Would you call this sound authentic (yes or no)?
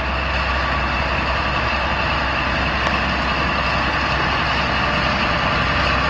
yes